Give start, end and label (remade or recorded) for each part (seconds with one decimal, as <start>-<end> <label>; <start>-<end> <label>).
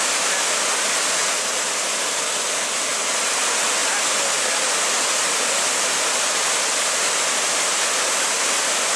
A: 0.0-9.0 recorded